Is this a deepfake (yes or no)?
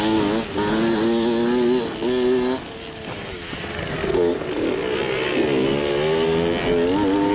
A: no